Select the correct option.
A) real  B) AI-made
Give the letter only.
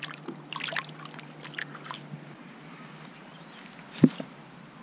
A